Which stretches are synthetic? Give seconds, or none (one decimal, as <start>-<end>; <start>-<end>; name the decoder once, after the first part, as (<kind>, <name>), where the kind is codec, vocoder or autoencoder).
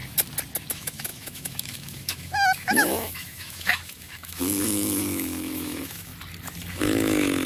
0.7-6.1 (autoencoder, DAC-VAE); 6.7-7.5